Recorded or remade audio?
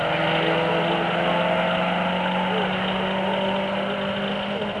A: recorded